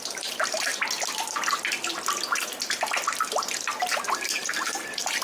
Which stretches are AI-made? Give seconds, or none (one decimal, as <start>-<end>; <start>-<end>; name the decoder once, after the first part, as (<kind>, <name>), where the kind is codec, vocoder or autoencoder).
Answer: 0.0-0.7 (vocoder, BigVGAN v2); 3.8-5.2